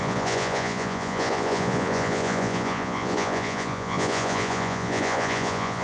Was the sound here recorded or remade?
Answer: remade